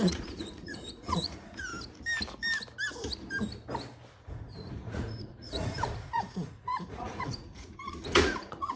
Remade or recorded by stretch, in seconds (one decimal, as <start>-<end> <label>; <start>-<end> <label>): 0.0-1.7 remade; 1.7-4.1 recorded; 4.1-8.8 remade